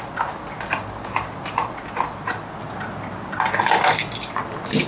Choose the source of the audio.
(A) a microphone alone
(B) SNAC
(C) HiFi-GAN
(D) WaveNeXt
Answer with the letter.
A